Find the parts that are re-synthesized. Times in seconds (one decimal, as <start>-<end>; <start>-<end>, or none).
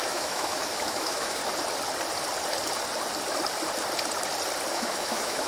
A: 0.0-1.4; 4.7-5.5